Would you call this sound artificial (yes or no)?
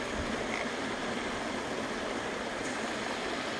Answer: no